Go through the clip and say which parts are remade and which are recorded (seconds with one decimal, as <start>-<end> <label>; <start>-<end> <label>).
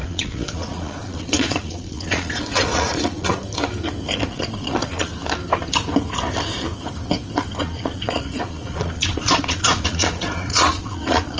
0.0-3.3 remade; 3.3-4.3 recorded; 4.3-5.1 remade; 5.1-7.6 recorded; 7.6-11.4 remade